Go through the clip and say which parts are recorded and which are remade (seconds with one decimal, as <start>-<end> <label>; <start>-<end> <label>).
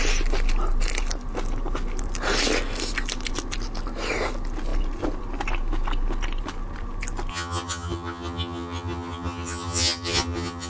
0.0-7.3 recorded; 7.3-10.7 remade